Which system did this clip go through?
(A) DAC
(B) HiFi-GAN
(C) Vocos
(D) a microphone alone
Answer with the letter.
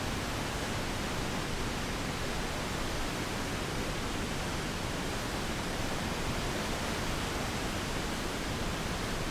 D